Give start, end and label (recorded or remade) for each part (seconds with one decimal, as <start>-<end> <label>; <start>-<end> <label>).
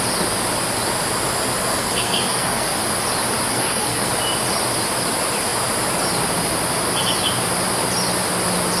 0.0-1.7 recorded; 1.7-2.8 remade; 2.8-3.5 recorded; 3.5-4.1 remade; 4.1-8.8 recorded